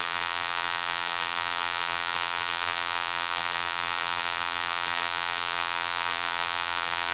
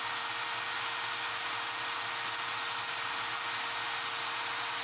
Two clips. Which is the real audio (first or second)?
second